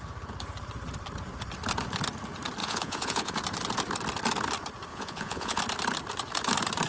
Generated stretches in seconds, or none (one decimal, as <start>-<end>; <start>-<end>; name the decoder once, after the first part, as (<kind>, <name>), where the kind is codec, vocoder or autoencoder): 2.6-3.3 (vocoder, Vocos); 4.9-5.6